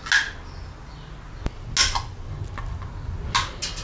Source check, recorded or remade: recorded